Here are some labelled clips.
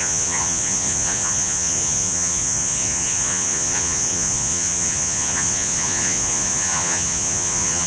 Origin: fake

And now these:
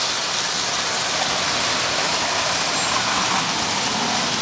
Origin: real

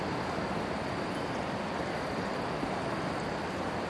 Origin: real